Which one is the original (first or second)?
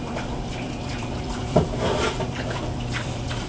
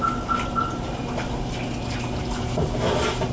second